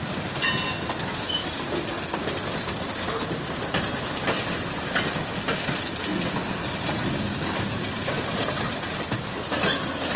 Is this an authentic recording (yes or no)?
yes